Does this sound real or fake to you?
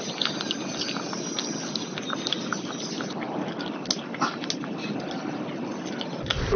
real